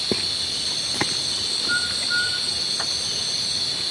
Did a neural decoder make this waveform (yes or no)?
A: no